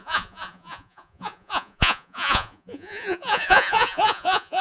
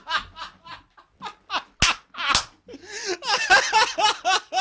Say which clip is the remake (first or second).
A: first